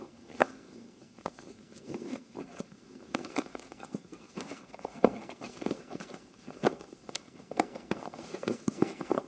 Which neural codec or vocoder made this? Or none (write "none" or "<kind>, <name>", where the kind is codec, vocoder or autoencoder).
codec, SNAC